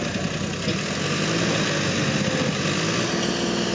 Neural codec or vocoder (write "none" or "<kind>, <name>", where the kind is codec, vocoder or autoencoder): none